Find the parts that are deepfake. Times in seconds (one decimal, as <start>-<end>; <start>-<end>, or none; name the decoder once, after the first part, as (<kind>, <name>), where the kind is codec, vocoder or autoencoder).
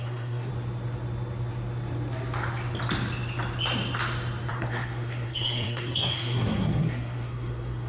0.0-0.5 (codec, SNAC); 4.5-7.9